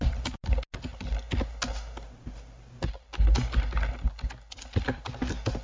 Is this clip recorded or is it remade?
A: recorded